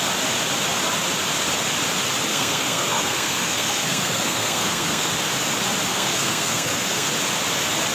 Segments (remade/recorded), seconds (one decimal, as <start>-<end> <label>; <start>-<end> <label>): 0.0-2.3 recorded; 2.3-5.1 remade; 5.1-5.9 recorded; 5.9-7.1 remade; 7.1-7.9 recorded